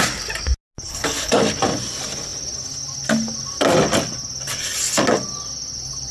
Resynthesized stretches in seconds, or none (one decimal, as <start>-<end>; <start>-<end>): 0.9-1.4